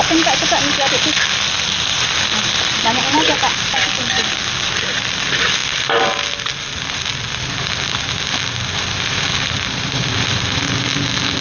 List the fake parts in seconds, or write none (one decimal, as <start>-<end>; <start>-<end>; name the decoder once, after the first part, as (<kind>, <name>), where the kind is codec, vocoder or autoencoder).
none